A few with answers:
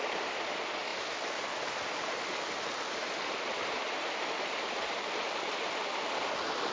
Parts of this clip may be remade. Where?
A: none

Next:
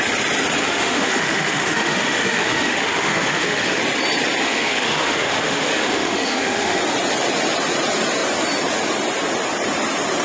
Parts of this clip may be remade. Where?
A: 0.6-3.8 (autoencoder, DAC-VAE); 4.4-6.8

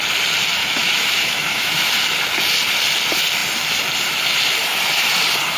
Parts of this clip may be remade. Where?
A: 0.6-1.9 (autoencoder, DAC-VAE)

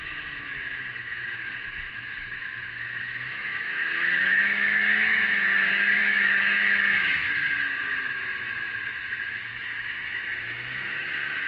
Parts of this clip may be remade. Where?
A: 0.0-11.5 (autoencoder, DAC-VAE)

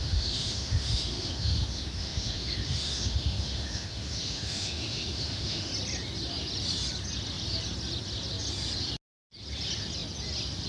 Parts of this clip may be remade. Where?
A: 0.0-5.7 (autoencoder, DAC-VAE)

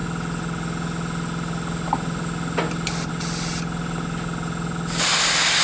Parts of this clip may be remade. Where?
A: none